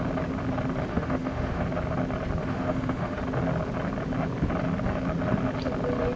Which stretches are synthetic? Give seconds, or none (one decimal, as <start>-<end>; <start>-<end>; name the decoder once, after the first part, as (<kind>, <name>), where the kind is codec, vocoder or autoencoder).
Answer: 0.9-1.6 (autoencoder, DAC-VAE); 2.4-3.2